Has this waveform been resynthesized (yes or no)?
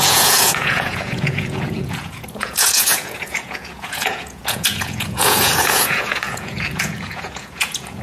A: yes